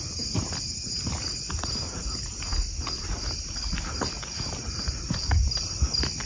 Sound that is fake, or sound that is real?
real